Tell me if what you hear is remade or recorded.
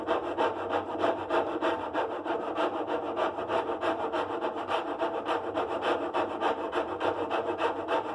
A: remade